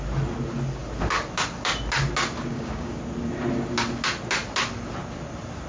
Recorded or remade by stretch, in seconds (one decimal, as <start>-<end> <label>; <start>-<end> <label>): 0.0-2.5 recorded; 2.5-3.0 remade; 3.0-5.7 recorded